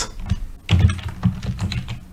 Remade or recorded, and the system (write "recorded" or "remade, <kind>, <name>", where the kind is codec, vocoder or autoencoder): recorded